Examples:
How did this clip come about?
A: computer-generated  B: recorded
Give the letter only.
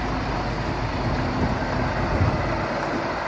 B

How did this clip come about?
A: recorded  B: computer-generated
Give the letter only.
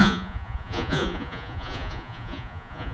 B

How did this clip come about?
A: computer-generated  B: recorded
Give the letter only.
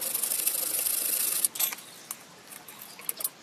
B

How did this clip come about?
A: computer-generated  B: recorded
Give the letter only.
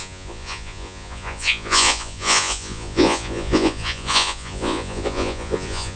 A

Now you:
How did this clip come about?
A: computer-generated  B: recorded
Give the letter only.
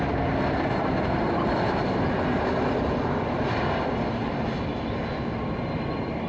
B